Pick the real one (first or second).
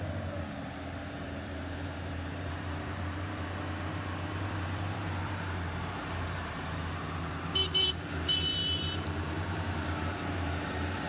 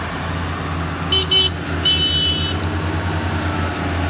second